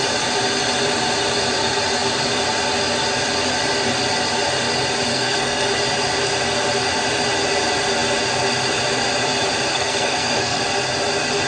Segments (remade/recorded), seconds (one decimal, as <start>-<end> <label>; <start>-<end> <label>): 0.0-5.1 recorded; 5.1-5.7 remade; 5.7-9.7 recorded; 9.7-10.6 remade; 10.6-11.5 recorded